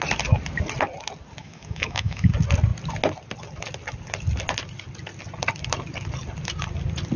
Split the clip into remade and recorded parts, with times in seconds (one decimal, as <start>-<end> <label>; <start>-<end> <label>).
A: 0.0-1.4 recorded; 1.4-2.3 remade; 2.3-7.2 recorded